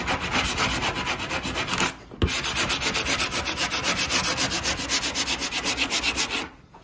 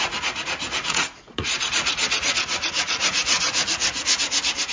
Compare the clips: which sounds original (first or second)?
first